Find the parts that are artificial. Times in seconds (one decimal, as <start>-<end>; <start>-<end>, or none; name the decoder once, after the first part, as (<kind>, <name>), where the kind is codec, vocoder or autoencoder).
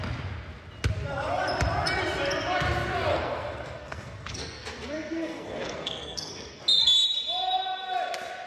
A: 3.1-6.6 (codec, SNAC)